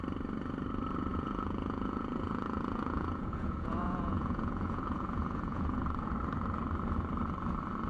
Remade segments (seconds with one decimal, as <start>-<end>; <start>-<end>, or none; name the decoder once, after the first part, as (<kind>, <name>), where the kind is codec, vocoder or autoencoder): 1.1-5.8 (vocoder, Vocos)